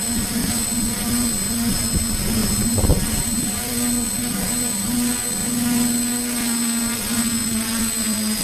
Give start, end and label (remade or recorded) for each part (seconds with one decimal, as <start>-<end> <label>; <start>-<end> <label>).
0.0-8.4 recorded